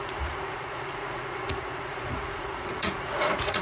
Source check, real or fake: fake